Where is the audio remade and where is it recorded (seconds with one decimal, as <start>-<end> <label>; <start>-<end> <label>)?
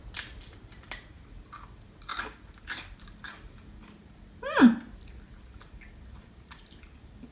0.0-7.3 recorded